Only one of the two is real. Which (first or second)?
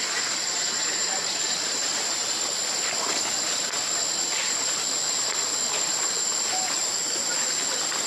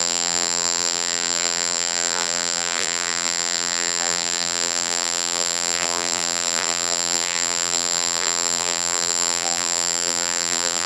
first